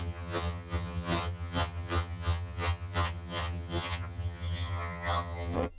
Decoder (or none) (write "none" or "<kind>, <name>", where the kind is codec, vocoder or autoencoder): vocoder, HiFi-GAN